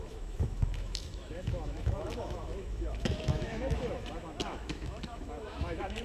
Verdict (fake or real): fake